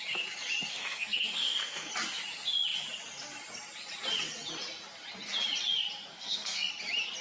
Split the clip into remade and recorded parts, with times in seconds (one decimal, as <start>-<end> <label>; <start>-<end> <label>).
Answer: 0.0-0.7 recorded; 0.7-1.9 remade; 1.9-6.1 recorded; 6.1-6.7 remade; 6.7-7.2 recorded